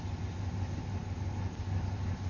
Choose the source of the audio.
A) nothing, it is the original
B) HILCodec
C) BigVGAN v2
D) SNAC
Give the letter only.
A